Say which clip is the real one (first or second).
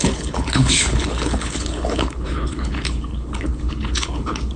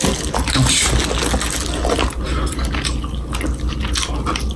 second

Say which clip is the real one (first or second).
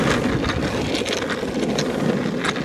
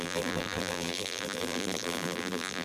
first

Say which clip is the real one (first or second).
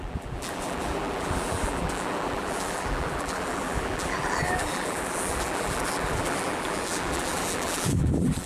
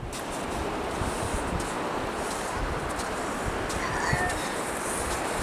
second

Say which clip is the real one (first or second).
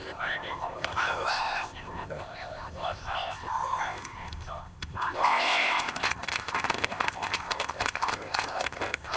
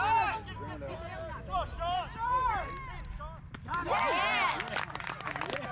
second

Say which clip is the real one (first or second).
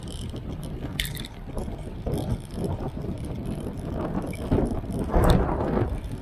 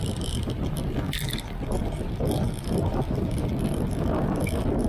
second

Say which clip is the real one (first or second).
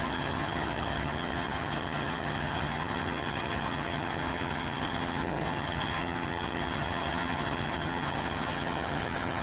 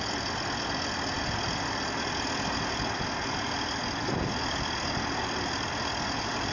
second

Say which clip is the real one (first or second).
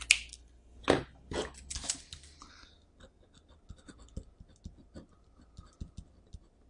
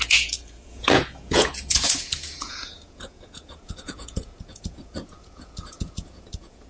first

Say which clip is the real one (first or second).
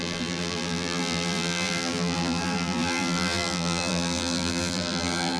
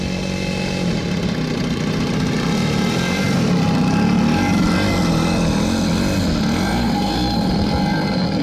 second